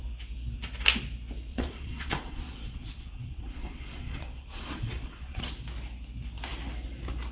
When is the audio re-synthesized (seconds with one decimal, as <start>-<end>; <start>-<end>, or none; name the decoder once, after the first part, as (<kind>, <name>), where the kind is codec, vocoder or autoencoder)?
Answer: 1.5-5.5 (vocoder, Vocos)